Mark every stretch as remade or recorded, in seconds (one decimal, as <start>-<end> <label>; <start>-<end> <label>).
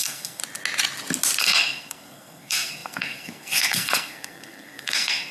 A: 0.0-0.4 remade; 0.4-1.4 recorded; 1.4-5.3 remade